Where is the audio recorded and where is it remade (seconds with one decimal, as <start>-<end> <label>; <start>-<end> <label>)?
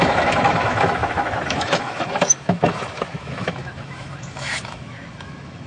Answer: 0.0-5.7 remade